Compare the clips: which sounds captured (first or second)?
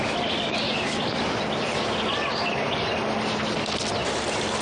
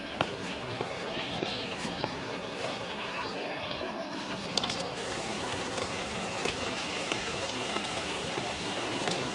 first